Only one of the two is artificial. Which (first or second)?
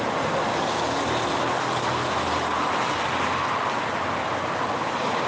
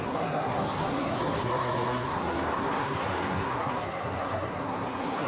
second